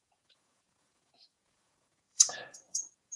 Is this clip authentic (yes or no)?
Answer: no